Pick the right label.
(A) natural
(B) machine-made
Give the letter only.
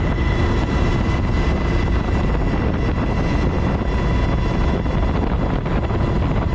A